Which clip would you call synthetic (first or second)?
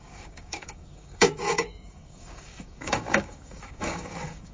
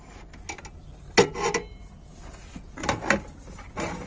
first